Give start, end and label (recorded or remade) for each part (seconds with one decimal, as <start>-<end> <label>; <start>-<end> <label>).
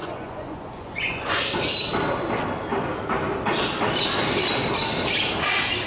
0.0-1.4 remade; 1.4-5.9 recorded